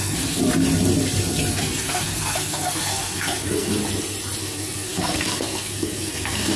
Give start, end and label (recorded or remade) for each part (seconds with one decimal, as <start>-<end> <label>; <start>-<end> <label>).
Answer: 0.0-0.4 remade; 0.4-1.5 recorded; 1.5-3.8 remade; 3.8-4.4 recorded; 4.4-6.6 remade